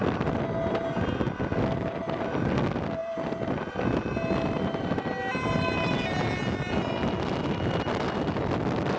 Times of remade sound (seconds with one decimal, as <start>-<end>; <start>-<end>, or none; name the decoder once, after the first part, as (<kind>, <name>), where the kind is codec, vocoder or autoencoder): none